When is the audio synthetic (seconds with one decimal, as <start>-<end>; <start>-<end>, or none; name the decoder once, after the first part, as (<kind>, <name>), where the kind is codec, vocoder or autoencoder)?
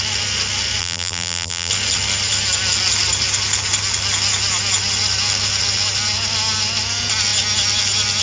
0.8-1.7 (vocoder, BigVGAN v2)